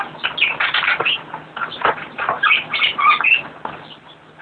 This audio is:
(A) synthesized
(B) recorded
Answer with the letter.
B